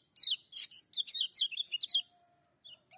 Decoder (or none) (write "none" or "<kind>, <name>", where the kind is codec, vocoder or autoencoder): none